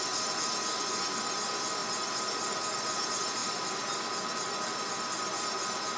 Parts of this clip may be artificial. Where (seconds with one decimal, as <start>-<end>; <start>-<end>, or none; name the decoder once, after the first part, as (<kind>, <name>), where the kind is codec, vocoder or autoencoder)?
1.8-2.6 (vocoder, BigVGAN v2); 3.4-5.1